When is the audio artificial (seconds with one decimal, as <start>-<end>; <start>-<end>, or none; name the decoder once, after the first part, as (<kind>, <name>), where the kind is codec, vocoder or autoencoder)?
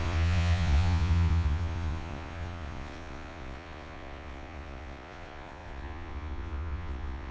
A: 0.0-7.3 (vocoder, Vocos)